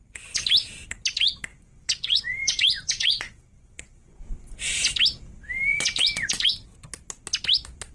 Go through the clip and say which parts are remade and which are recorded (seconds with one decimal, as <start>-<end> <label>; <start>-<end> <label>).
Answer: 0.0-1.5 recorded; 1.5-4.2 remade; 4.2-5.7 recorded; 5.7-6.5 remade; 6.5-7.9 recorded